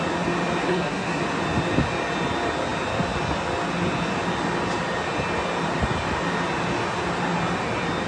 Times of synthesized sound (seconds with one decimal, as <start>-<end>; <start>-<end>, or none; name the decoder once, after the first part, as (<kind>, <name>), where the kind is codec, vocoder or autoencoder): 0.6-1.2 (codec, SNAC)